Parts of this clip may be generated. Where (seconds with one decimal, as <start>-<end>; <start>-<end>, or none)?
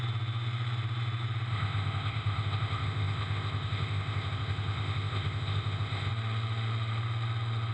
1.5-6.1